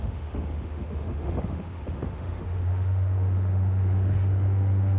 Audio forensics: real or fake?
fake